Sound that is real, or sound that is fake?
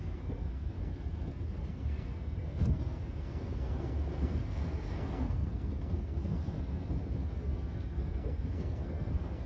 fake